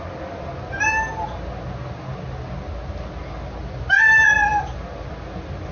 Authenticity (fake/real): real